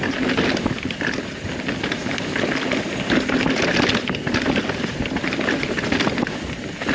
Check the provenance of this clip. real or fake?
real